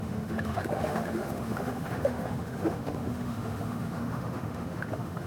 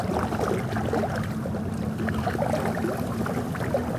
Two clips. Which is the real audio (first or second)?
second